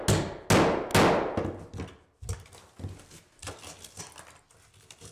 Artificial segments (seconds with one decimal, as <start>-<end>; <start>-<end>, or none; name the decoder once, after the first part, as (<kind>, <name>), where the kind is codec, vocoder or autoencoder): none